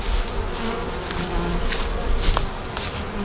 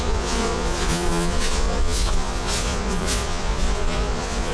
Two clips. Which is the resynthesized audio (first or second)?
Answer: second